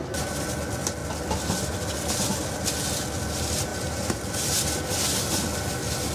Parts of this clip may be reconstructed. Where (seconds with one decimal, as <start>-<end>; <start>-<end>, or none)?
3.7-4.2